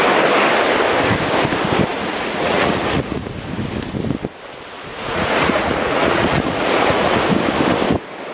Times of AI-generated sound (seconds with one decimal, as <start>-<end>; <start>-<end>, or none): 1.9-3.3; 4.9-7.2